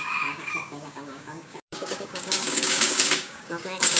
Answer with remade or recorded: remade